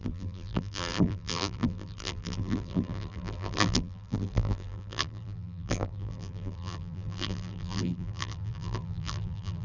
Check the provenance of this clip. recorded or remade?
remade